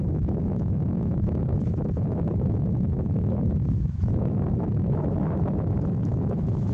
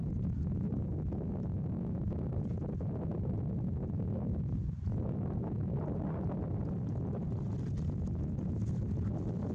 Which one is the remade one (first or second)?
first